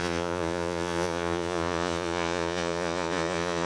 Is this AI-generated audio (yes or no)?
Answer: yes